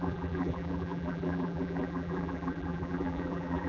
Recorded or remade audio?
remade